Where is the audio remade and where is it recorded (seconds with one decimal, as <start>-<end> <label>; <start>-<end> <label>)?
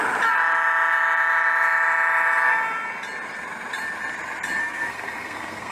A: 0.0-4.6 recorded; 4.6-5.7 remade